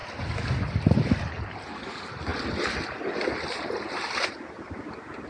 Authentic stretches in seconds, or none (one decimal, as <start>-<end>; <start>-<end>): 0.0-5.3